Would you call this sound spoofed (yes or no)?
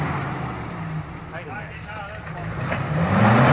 no